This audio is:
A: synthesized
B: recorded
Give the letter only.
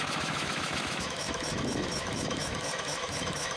A